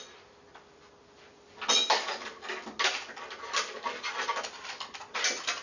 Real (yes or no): yes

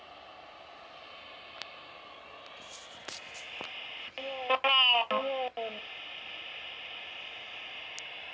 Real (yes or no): yes